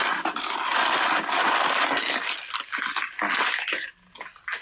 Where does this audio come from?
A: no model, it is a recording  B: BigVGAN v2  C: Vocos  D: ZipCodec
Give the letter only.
A